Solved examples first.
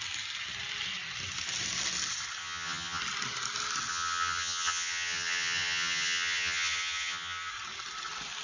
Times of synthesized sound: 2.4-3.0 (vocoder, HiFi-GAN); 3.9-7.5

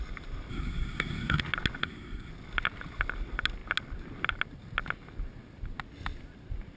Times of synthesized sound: 0.5-1.4 (codec, SNAC); 1.8-2.3

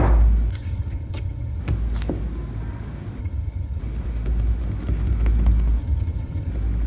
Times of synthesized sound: 0.5-1.6 (vocoder, HiFi-GAN); 3.2-3.8; 5.8-6.5

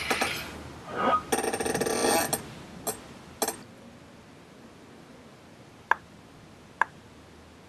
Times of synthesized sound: none

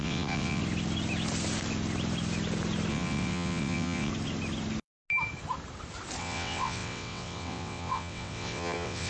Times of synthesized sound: 0.0-0.6 (vocoder, WaveNeXt); 2.9-4.1; 6.2-9.1

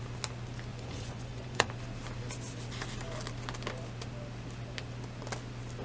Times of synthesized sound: 0.7-1.7 (vocoder, Vocos)

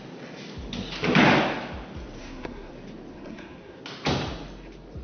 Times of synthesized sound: 2.2-2.7 (codec, SNAC); 3.1-3.8

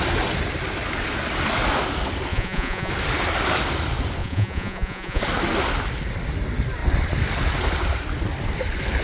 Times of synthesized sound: 2.3-2.9 (vocoder, Vocos); 4.2-5.2